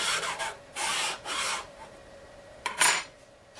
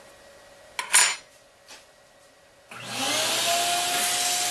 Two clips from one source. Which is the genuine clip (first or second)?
second